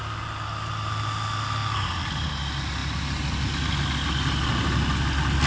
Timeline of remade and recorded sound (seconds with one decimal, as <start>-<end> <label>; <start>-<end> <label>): 0.0-5.5 recorded